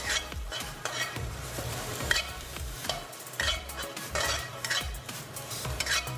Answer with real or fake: fake